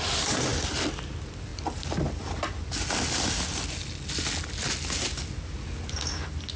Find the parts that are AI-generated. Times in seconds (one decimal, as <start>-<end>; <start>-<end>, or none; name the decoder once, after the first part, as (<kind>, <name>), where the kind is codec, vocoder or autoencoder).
none